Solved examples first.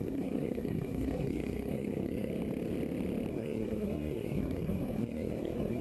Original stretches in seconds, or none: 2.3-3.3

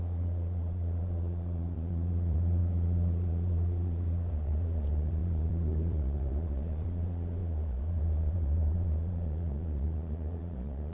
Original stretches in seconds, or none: none

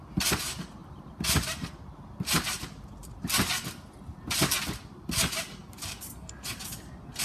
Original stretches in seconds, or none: 0.0-0.8; 1.7-7.2

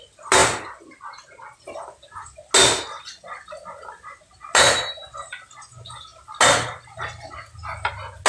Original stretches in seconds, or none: 0.0-0.4; 1.6-8.3

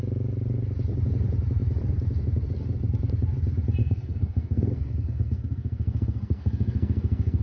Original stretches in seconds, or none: 0.0-3.8

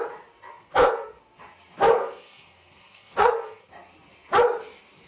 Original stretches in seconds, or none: 0.0-0.5; 1.2-1.9; 3.7-5.1